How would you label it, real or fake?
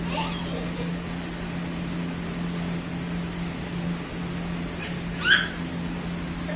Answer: real